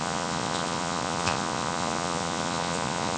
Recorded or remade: remade